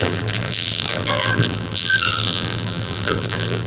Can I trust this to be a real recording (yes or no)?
no